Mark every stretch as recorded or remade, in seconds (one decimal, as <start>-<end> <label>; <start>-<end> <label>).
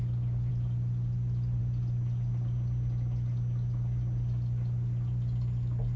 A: 0.0-6.0 recorded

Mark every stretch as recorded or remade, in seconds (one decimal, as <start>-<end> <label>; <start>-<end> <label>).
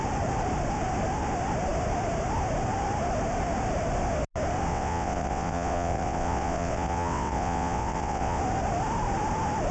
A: 0.0-4.7 recorded; 4.7-8.4 remade; 8.4-9.7 recorded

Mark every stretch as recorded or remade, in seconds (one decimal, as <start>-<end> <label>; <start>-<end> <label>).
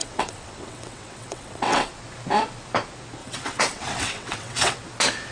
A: 0.0-1.9 remade; 1.9-3.2 recorded; 3.2-4.8 remade; 4.8-5.3 recorded